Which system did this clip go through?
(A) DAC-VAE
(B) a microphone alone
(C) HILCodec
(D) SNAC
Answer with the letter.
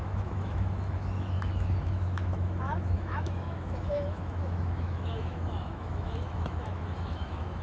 A